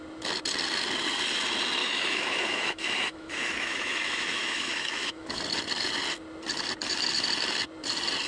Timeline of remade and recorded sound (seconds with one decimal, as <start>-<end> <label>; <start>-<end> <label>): 0.0-1.8 recorded; 1.8-5.4 remade; 5.4-8.3 recorded